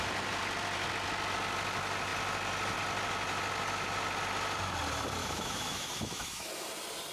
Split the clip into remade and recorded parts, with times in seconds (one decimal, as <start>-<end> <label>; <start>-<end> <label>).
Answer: 0.0-5.2 recorded; 5.2-6.5 remade; 6.5-7.1 recorded